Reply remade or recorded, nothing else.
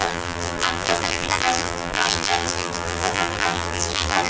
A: remade